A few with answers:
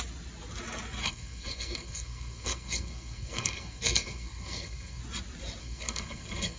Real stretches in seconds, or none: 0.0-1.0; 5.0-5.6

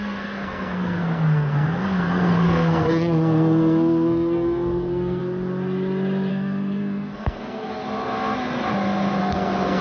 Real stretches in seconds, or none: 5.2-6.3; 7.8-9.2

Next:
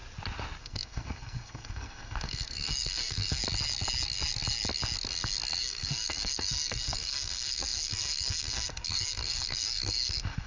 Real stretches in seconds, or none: 0.0-0.6; 3.4-5.6

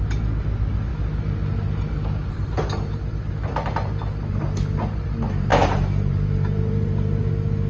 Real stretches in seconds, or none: 0.0-5.5; 7.3-7.7

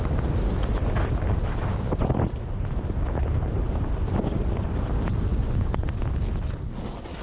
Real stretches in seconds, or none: 0.0-5.3; 5.9-7.2

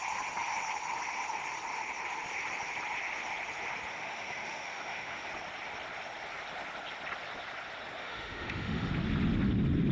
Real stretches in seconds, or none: 0.0-3.9; 5.3-8.0; 8.9-9.9

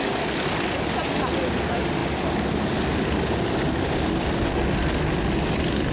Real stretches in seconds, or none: 0.0-5.9